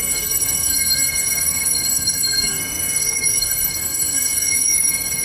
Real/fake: fake